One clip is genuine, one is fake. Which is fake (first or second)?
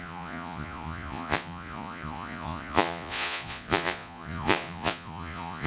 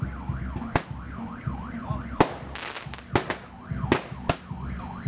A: first